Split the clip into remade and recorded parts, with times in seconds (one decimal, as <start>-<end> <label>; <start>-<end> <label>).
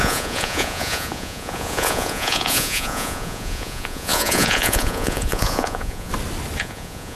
0.0-6.1 remade; 6.1-6.6 recorded; 6.6-7.2 remade